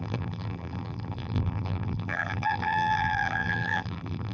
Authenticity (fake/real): fake